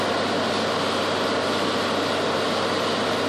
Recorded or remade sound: recorded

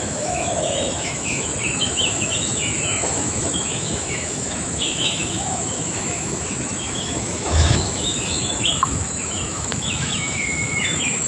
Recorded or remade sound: remade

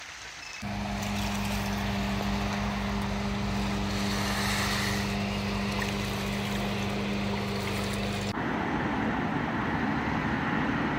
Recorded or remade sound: recorded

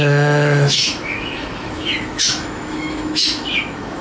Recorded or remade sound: remade